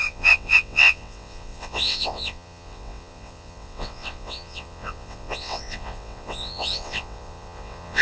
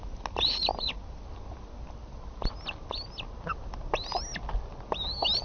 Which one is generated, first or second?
first